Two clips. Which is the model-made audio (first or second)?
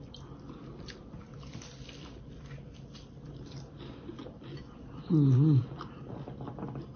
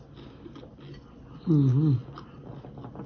first